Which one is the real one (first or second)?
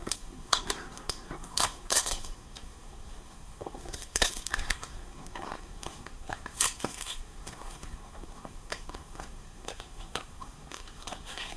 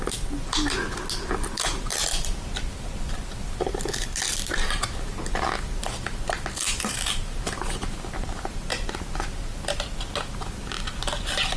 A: second